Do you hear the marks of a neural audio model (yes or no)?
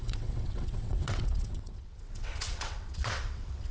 yes